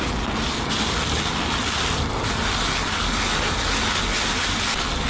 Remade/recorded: recorded